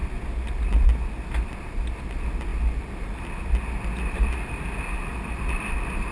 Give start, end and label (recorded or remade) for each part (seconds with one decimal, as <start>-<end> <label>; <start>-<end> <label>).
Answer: 0.0-6.1 recorded